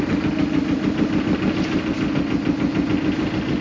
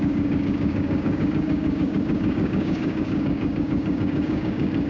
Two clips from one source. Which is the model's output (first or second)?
second